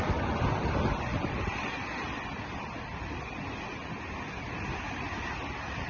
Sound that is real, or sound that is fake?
real